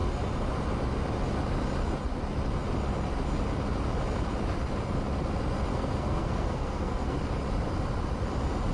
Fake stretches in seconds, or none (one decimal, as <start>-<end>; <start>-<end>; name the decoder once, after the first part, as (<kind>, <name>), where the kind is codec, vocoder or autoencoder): 5.7-7.2 (codec, SNAC)